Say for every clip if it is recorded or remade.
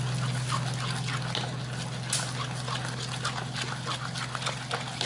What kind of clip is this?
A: recorded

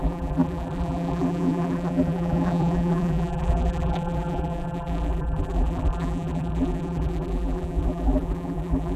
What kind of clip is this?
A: remade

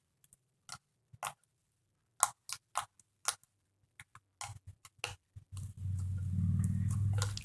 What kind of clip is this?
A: recorded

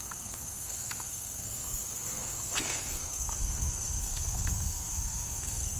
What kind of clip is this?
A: remade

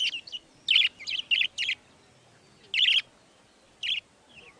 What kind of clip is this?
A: recorded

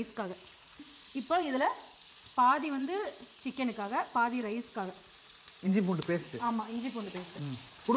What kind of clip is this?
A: remade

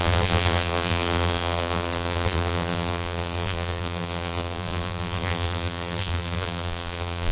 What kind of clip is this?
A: remade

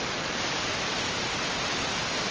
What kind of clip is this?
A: recorded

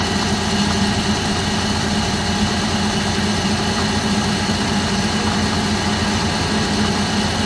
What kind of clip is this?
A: recorded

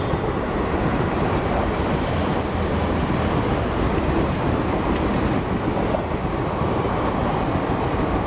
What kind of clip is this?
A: recorded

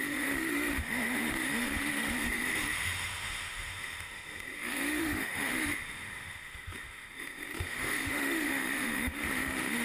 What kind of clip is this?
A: remade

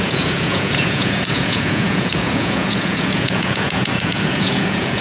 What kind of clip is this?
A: remade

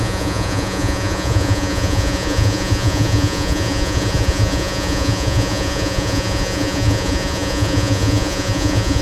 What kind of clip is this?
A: remade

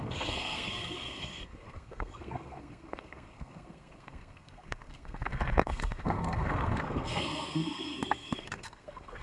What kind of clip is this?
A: remade